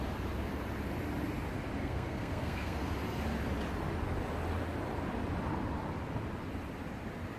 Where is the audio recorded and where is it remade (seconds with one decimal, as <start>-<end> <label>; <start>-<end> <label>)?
0.0-1.8 recorded; 1.8-2.9 remade; 2.9-7.4 recorded